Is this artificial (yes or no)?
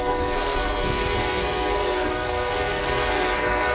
yes